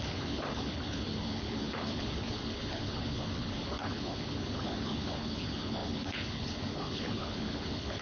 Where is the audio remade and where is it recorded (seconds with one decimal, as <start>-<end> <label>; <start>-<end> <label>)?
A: 0.0-8.0 remade